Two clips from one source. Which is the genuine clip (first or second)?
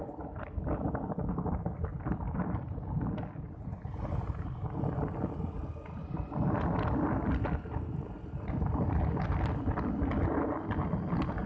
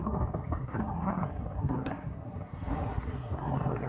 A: first